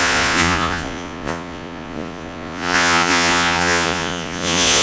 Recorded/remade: remade